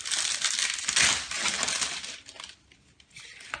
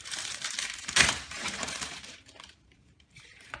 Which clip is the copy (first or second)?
second